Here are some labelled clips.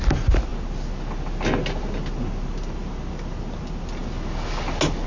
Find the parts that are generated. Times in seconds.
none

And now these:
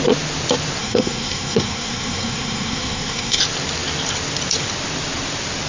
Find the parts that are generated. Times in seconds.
0.8-3.4 (codec, SNAC)

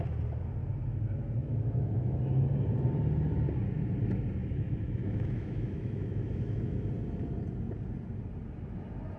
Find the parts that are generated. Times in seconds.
1.4-2.2 (autoencoder, DAC-VAE); 4.4-6.9

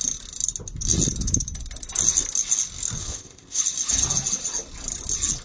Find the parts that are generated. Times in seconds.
3.0-3.6 (codec, ZipCodec)

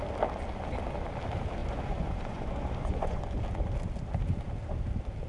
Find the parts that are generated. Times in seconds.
1.6-3.2 (vocoder, Vocos)